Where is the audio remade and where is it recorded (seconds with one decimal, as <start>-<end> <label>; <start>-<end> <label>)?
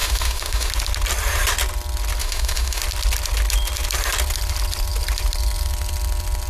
0.0-0.7 remade; 0.7-2.2 recorded; 2.2-2.8 remade; 2.8-6.5 recorded